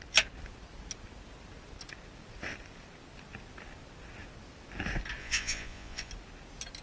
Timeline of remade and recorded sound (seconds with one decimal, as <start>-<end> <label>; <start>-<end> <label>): 0.0-5.2 recorded; 5.2-6.1 remade; 6.1-6.8 recorded